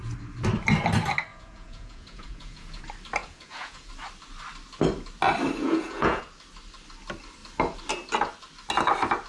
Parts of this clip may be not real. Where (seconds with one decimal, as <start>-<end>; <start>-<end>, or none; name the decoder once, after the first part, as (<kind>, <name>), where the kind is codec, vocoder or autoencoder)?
1.3-2.8 (vocoder, Vocos); 3.2-3.9; 5.6-6.2